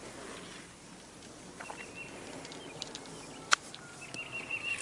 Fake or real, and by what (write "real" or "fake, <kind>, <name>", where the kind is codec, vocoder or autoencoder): real